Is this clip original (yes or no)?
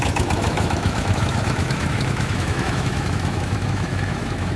no